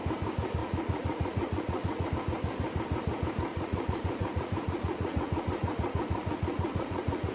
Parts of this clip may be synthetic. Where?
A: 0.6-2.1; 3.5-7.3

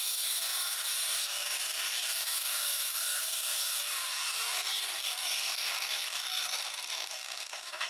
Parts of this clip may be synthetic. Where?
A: 0.0-7.9

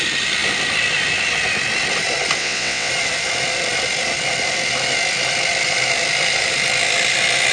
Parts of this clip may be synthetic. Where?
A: 2.4-2.9

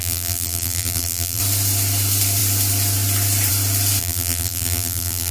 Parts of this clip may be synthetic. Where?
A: 0.0-1.4; 4.0-5.3

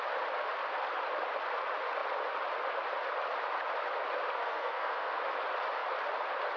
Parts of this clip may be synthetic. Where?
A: 4.4-5.2

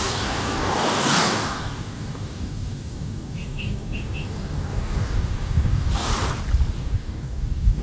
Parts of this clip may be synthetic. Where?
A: 0.0-6.1; 6.8-7.8

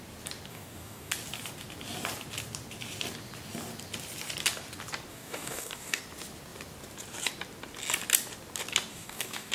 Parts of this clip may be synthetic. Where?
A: 0.5-1.1; 5.1-6.0; 8.9-9.5

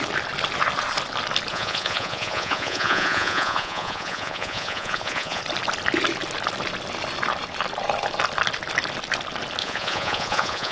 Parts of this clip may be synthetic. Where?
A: 1.5-5.4; 9.6-10.7